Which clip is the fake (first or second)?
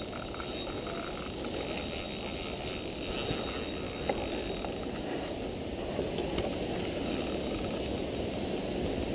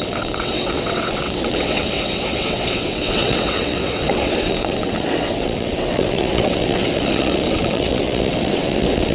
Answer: second